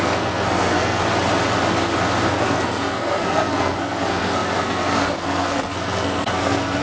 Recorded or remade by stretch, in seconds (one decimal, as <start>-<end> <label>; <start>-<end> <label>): 0.0-1.0 remade; 1.0-2.3 recorded; 2.3-6.8 remade